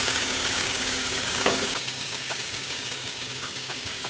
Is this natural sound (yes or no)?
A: no